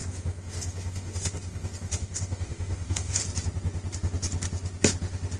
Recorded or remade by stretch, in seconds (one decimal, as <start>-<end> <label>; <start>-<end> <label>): 0.0-3.2 remade; 3.2-5.4 recorded

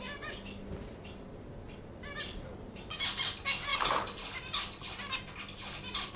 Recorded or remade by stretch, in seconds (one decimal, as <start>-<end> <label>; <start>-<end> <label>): 0.0-6.2 recorded

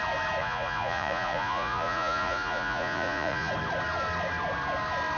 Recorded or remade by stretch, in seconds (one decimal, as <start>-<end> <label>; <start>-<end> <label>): 0.0-0.4 recorded; 0.4-3.5 remade; 3.5-5.2 recorded

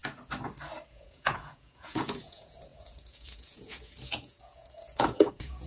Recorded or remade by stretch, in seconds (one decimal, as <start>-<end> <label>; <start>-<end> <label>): 0.0-0.9 recorded; 0.9-5.7 remade

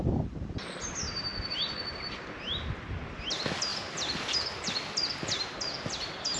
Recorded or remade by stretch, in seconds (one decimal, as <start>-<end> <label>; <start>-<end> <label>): 0.0-3.7 recorded; 3.7-4.6 remade; 4.6-6.4 recorded

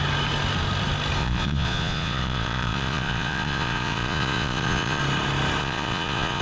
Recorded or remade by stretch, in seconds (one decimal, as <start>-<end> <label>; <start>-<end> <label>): 0.0-1.2 recorded; 1.2-5.0 remade; 5.0-5.6 recorded; 5.6-6.4 remade

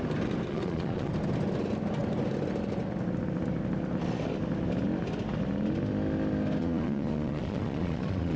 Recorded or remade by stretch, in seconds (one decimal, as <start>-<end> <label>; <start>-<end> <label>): 0.0-0.5 recorded; 0.5-1.1 remade; 1.1-6.6 recorded; 6.6-8.4 remade

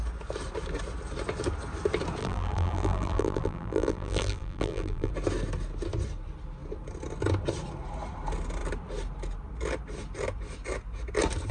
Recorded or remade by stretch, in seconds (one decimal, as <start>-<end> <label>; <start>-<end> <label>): 0.0-2.2 recorded; 2.2-5.1 remade; 5.1-11.5 recorded